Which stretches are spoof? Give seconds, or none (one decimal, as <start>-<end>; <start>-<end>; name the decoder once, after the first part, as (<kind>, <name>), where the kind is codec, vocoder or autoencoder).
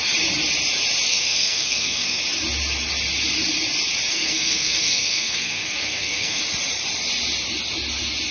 1.1-2.2 (codec, SNAC); 4.1-6.4